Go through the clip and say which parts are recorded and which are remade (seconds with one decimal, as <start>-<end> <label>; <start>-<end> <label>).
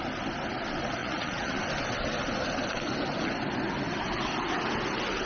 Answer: 0.0-1.0 recorded; 1.0-1.6 remade; 1.6-5.3 recorded